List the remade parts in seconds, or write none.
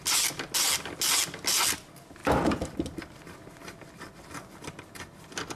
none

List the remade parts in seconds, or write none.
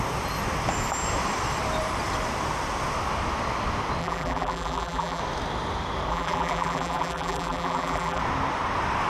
4.0-5.2 (vocoder, BigVGAN v2); 6.1-8.2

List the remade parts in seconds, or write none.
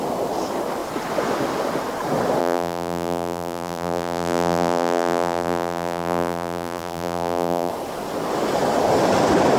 2.4-7.7 (vocoder, BigVGAN v2)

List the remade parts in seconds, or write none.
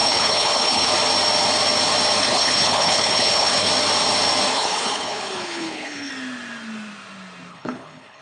0.0-0.9 (codec, HILCodec); 2.2-3.7; 4.5-6.1; 7.5-8.2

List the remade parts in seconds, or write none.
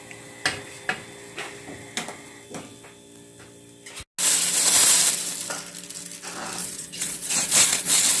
6.6-8.2 (vocoder, Vocos)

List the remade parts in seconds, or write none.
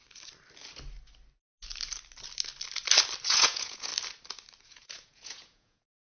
3.3-3.9 (vocoder, Vocos); 4.6-6.1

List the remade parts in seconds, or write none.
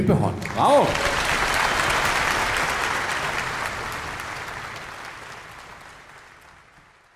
none